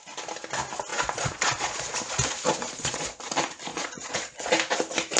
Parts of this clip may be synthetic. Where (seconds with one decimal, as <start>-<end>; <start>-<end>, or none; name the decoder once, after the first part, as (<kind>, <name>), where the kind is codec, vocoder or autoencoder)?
0.9-1.9 (vocoder, Vocos); 2.6-3.2; 3.7-4.5

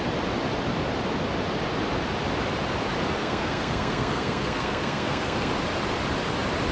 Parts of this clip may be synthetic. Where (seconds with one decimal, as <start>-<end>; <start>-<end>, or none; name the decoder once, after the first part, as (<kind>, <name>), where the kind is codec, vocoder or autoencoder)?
3.2-5.5 (codec, SNAC)

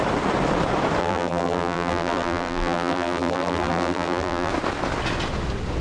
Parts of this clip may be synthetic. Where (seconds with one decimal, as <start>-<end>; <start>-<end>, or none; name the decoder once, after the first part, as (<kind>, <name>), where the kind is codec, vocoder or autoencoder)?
1.0-4.5 (vocoder, BigVGAN v2)

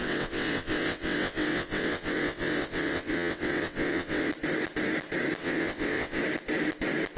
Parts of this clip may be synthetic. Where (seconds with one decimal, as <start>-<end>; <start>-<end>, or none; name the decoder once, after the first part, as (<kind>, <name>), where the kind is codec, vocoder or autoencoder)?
0.0-4.3 (vocoder, WaveNeXt); 5.4-6.2

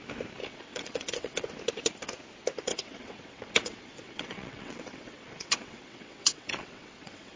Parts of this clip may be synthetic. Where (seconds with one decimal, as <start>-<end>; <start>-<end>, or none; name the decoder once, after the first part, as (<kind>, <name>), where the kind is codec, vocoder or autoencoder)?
0.4-1.5 (vocoder, WaveNeXt); 2.7-7.4